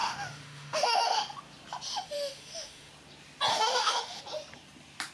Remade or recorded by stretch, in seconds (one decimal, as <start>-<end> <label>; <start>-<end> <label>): 0.0-1.4 remade; 1.4-1.9 recorded; 1.9-2.9 remade; 2.9-3.5 recorded; 3.5-4.2 remade; 4.2-5.1 recorded